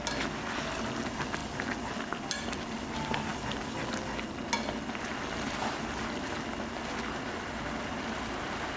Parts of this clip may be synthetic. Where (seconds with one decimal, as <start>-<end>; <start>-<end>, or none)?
none